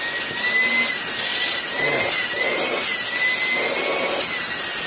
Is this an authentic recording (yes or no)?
yes